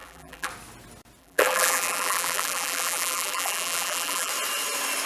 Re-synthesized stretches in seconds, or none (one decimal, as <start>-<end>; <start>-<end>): 0.0-0.5; 1.2-4.3